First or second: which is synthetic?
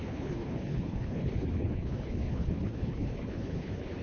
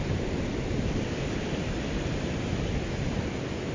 first